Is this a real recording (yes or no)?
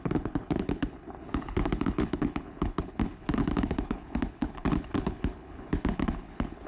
no